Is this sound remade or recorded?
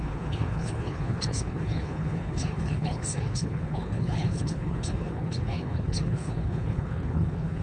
remade